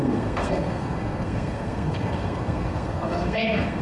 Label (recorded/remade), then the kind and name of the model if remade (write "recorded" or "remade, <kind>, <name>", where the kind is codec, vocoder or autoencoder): remade, codec, SNAC